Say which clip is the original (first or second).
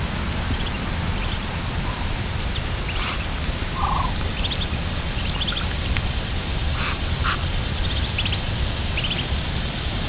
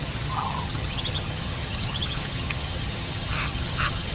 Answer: first